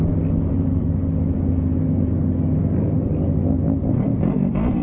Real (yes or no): yes